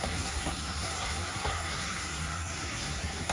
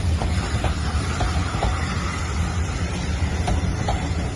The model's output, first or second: first